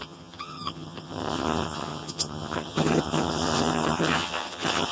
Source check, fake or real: fake